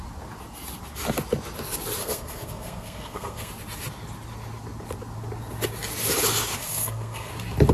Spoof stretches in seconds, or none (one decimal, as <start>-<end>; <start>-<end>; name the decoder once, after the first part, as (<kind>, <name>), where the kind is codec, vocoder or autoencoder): 2.0-3.5 (codec, SNAC); 6.6-7.3